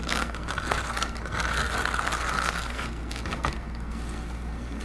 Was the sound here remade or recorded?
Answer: remade